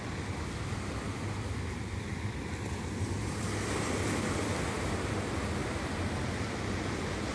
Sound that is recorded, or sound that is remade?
recorded